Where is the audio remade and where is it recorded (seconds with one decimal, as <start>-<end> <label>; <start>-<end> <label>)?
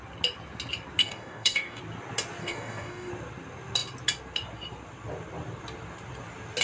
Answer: 0.0-1.0 recorded; 1.0-1.8 remade; 1.8-2.4 recorded; 2.4-3.1 remade; 3.1-6.6 recorded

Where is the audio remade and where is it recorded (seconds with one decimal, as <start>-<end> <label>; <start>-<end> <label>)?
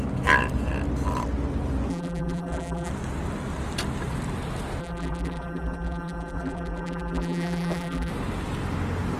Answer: 0.0-1.9 recorded; 1.9-2.9 remade; 2.9-4.8 recorded; 4.8-8.1 remade; 8.1-9.2 recorded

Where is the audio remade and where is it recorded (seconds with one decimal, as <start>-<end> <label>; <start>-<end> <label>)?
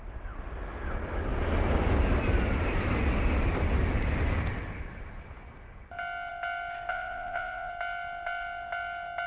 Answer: 0.0-6.9 recorded; 6.9-7.7 remade; 7.7-9.3 recorded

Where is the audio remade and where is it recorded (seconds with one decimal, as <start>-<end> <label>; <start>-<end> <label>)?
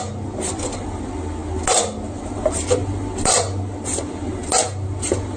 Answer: 0.0-5.4 recorded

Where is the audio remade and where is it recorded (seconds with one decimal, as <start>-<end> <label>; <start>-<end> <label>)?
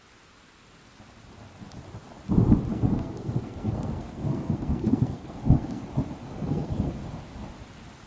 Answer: 0.0-2.7 recorded; 2.7-5.8 remade; 5.8-6.2 recorded; 6.2-6.9 remade; 6.9-8.1 recorded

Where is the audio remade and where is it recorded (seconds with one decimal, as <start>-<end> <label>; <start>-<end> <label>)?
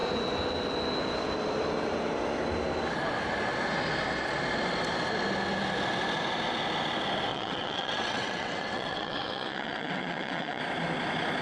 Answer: 0.0-7.3 recorded; 7.3-10.6 remade; 10.6-11.4 recorded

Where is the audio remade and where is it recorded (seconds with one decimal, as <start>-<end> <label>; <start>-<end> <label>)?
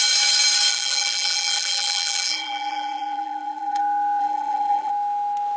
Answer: 0.0-0.7 recorded; 0.7-3.8 remade; 3.8-4.2 recorded; 4.2-4.9 remade; 4.9-5.6 recorded